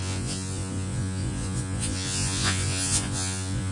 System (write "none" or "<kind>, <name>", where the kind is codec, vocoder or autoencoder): vocoder, Vocos